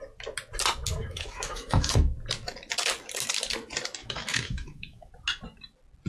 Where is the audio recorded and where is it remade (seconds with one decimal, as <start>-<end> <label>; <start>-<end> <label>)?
0.0-1.0 recorded; 1.0-2.0 remade; 2.0-4.0 recorded; 4.0-5.1 remade; 5.1-6.1 recorded